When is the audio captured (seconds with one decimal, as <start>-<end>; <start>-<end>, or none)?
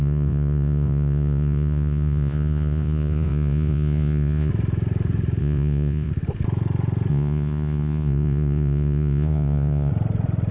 4.5-5.4; 6.1-7.1; 9.9-10.5